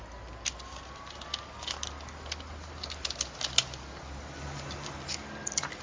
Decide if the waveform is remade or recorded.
recorded